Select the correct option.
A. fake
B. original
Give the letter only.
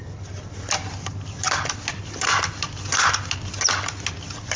B